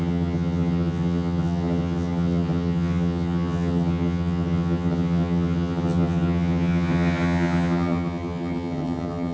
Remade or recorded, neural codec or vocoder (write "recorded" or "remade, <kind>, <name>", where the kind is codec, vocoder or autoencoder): remade, vocoder, HiFi-GAN